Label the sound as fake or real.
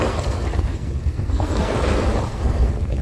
fake